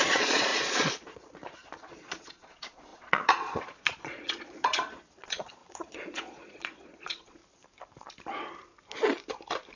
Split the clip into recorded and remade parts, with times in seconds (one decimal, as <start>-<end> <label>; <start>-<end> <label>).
0.0-7.4 remade; 7.4-9.8 recorded